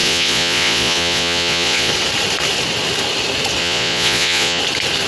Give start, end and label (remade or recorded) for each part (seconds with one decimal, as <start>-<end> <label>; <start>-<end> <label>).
0.0-1.9 remade; 1.9-3.6 recorded; 3.6-4.6 remade; 4.6-5.1 recorded